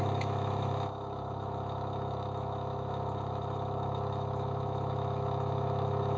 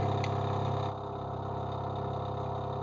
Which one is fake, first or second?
first